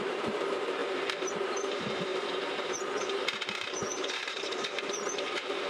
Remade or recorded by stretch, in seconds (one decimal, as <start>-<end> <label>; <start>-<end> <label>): 0.0-5.7 remade